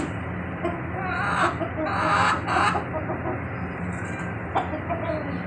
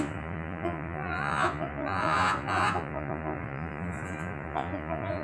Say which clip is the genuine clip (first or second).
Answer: first